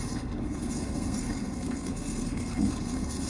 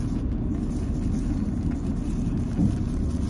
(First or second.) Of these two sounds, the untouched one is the second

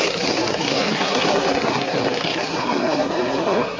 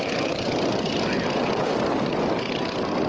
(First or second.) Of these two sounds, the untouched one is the second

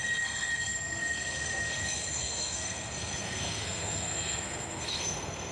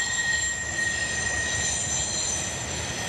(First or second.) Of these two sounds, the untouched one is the second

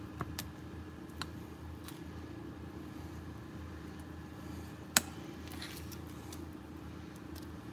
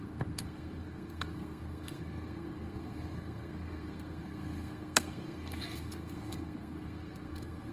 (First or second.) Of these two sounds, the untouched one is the first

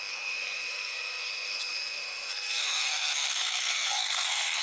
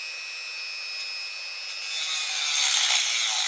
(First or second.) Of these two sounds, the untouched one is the second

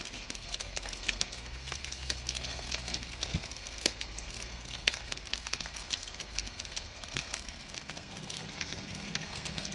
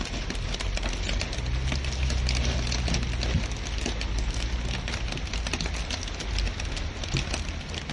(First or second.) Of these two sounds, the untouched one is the second